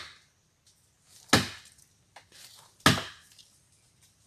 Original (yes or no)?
yes